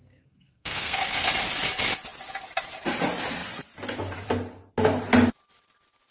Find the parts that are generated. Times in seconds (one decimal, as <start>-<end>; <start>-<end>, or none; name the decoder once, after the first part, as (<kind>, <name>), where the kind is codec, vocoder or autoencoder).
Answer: 0.0-1.3 (codec, SNAC)

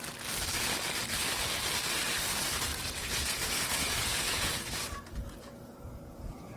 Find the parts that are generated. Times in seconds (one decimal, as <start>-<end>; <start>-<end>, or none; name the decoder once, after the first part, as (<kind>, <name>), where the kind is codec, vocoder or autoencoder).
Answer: 2.7-6.6 (vocoder, Vocos)

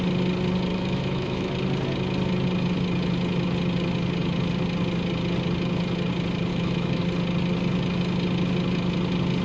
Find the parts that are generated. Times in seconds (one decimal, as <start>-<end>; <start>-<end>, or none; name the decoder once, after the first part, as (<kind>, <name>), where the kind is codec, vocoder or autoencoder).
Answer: 0.7-1.5 (autoencoder, DAC-VAE); 6.5-7.0

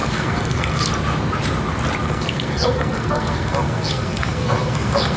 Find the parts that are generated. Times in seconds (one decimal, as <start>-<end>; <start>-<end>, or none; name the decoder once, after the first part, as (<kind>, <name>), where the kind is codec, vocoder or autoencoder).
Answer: 0.0-0.9 (codec, SNAC); 2.0-5.2

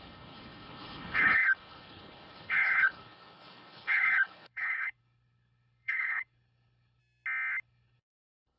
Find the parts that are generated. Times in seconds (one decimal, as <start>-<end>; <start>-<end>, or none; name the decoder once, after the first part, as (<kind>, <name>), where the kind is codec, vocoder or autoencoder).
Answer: 0.0-7.0 (codec, HILCodec); 7.6-8.6

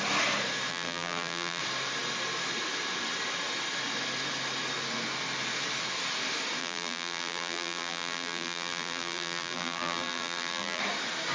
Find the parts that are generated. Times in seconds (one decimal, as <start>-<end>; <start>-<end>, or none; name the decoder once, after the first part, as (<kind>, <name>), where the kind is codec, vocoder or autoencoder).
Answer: 0.7-1.6 (vocoder, BigVGAN v2); 6.6-10.8